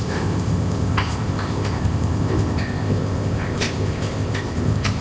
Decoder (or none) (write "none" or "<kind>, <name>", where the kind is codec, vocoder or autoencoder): codec, ZipCodec